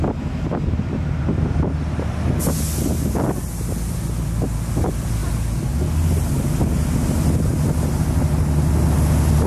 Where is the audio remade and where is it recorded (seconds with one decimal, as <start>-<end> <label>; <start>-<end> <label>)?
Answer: 0.0-9.5 recorded